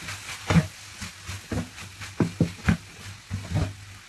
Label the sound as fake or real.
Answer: real